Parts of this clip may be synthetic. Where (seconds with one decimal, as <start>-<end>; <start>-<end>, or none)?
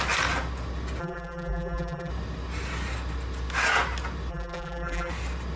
1.0-2.1; 4.3-5.1